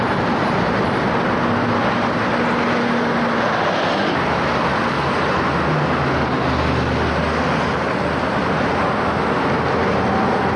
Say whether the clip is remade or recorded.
recorded